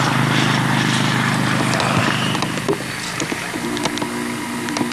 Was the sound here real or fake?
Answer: real